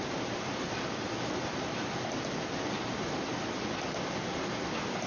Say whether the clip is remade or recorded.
recorded